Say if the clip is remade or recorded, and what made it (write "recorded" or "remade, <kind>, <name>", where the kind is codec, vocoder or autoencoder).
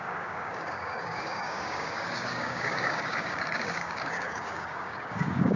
remade, codec, DAC